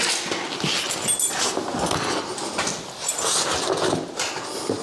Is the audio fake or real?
real